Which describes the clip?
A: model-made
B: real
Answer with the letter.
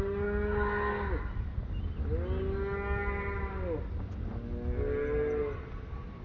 B